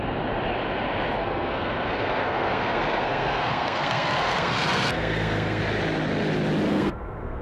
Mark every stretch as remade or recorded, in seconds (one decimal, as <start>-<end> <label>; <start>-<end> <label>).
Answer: 0.0-1.2 recorded; 1.2-5.6 remade; 5.6-6.7 recorded; 6.7-7.4 remade